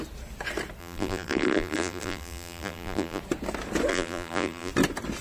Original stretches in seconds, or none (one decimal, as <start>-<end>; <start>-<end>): 0.0-0.8; 3.2-3.9; 4.7-5.2